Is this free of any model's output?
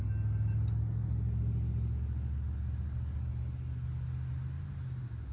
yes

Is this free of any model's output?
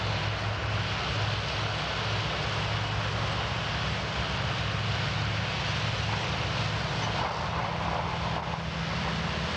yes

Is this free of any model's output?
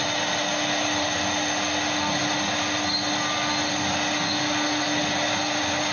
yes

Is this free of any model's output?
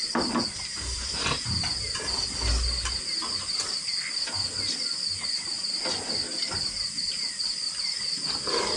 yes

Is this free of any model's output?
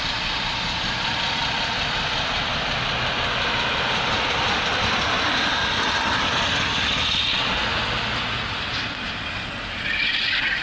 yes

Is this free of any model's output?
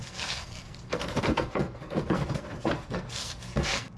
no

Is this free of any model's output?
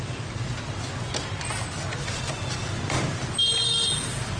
yes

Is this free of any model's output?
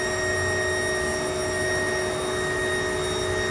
yes